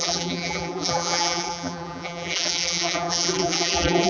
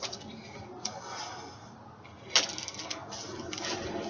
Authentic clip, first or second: second